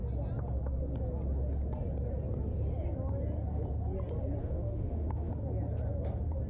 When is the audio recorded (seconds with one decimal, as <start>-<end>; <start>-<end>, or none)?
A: 0.0-4.4; 5.3-6.5